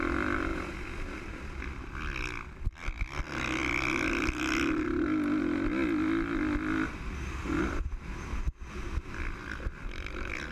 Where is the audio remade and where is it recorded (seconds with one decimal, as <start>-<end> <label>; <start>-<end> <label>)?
0.0-10.5 recorded